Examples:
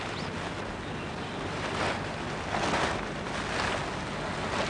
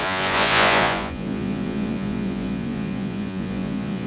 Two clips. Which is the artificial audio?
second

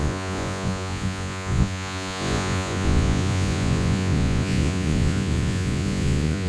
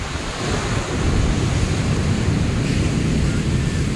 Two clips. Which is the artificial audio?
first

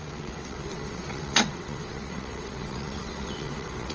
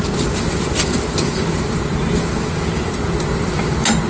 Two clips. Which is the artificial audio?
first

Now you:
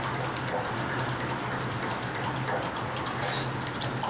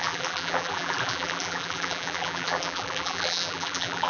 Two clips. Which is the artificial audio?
second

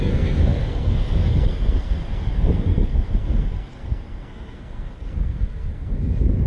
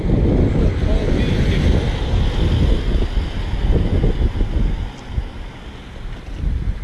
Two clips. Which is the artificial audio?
first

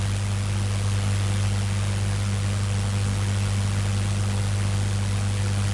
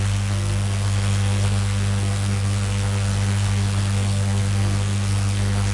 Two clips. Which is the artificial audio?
second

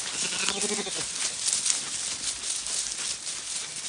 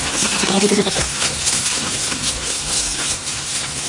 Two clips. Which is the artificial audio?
second